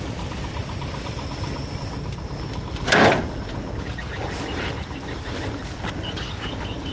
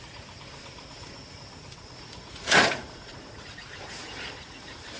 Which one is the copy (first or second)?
second